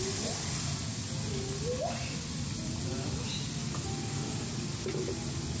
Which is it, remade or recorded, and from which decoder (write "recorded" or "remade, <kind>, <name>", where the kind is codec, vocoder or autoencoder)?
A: recorded